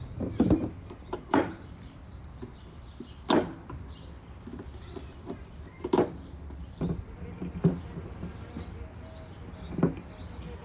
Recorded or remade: recorded